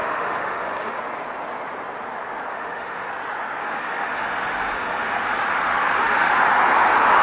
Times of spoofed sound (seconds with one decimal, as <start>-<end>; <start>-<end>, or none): 0.0-1.0; 2.5-3.1; 3.6-6.3